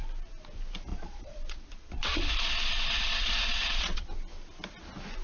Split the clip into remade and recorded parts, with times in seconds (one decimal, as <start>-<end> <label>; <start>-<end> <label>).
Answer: 0.0-0.9 recorded; 0.9-4.0 remade; 4.0-5.2 recorded